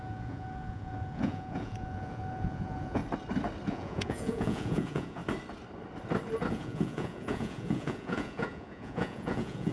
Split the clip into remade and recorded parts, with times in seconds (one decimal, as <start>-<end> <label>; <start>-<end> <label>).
0.0-3.0 remade; 3.0-3.7 recorded; 3.7-5.2 remade; 5.2-6.5 recorded; 6.5-9.7 remade